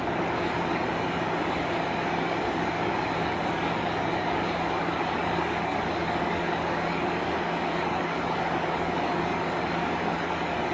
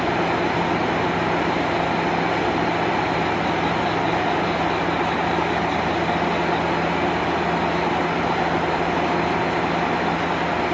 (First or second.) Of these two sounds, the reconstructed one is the first